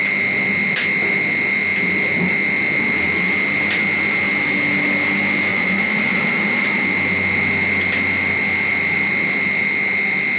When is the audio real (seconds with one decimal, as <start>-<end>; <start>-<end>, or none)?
0.0-5.5; 6.2-10.4